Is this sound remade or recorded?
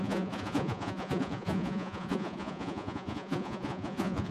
remade